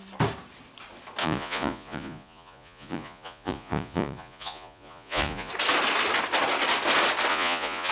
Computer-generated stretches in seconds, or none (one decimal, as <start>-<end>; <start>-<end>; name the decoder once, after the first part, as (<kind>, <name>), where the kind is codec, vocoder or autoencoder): 1.2-5.5 (vocoder, Vocos); 7.3-7.9